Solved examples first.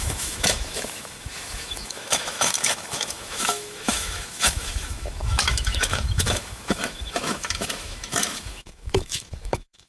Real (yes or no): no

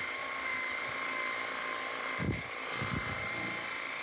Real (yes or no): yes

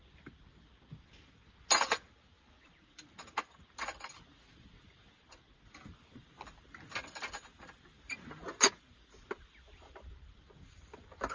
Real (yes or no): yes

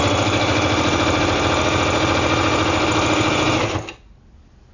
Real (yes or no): yes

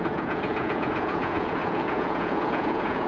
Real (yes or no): no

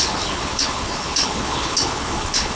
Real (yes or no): no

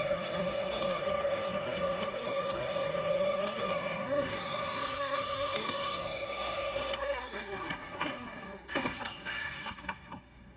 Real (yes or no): no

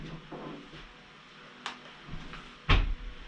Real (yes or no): yes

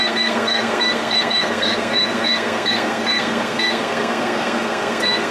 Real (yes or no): no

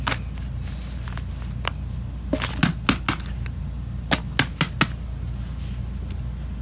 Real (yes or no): yes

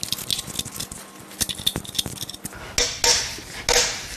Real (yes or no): yes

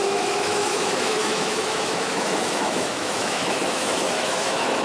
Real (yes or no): no